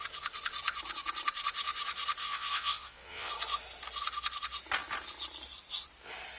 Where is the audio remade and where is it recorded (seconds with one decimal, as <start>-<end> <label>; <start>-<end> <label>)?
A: 0.0-2.2 recorded; 2.2-3.3 remade; 3.3-6.4 recorded